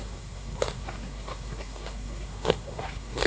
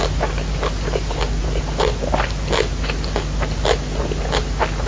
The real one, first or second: second